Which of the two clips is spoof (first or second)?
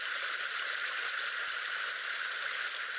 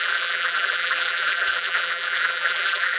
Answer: second